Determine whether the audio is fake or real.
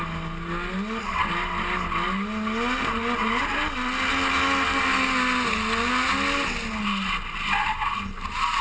real